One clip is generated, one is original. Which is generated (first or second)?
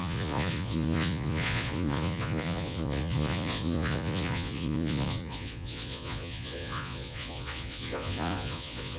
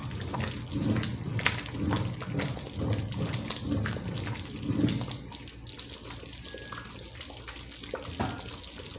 first